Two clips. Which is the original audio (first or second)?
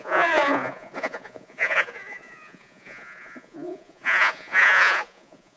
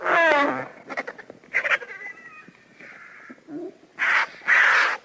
second